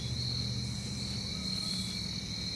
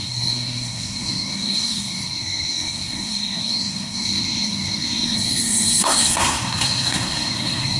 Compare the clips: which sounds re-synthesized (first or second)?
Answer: second